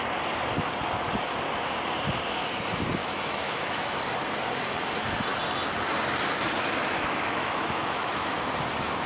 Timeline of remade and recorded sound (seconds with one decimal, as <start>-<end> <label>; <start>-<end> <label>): 0.0-3.0 recorded; 3.0-4.0 remade; 4.0-6.8 recorded; 6.8-8.5 remade; 8.5-9.1 recorded

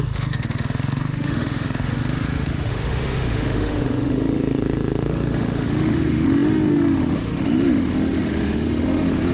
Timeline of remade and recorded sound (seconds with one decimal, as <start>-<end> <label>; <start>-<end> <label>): 0.0-9.3 remade